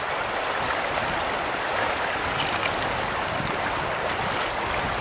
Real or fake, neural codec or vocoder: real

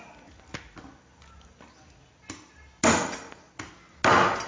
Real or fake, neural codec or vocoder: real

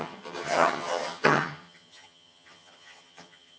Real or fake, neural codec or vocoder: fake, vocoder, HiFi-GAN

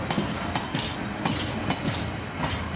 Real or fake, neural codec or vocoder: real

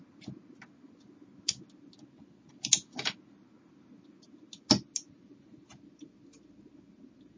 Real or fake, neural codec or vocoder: real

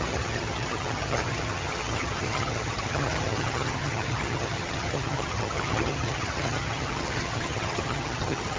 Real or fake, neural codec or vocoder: fake, vocoder, HiFi-GAN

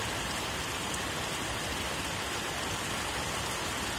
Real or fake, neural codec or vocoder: real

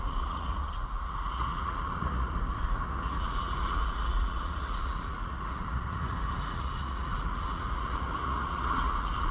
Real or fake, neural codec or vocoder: fake, vocoder, Vocos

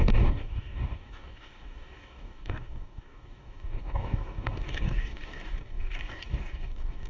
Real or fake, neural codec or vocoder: fake, codec, DAC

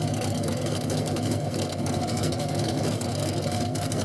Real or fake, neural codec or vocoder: fake, codec, SNAC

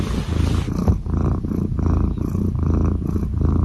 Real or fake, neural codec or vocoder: real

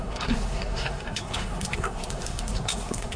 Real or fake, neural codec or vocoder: fake, codec, SNAC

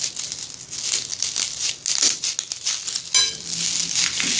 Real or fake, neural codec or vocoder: real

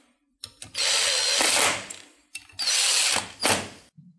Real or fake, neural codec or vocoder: real